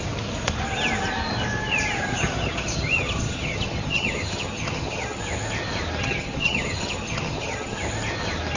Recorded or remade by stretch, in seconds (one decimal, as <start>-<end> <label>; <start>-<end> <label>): 0.0-2.1 recorded; 2.1-5.2 remade; 5.2-6.0 recorded; 6.0-7.8 remade; 7.8-8.6 recorded